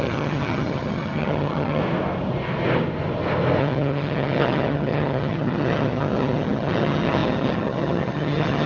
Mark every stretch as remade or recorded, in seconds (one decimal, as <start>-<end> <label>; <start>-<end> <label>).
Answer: 0.0-1.8 remade; 1.8-3.6 recorded; 3.6-8.7 remade

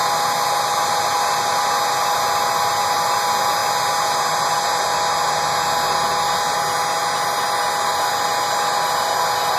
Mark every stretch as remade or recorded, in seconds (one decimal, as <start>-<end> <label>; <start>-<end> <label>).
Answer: 0.0-9.6 recorded